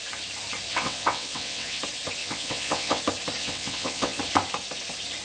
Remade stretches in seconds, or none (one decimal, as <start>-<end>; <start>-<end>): 0.7-1.8; 2.2-3.0; 3.4-4.2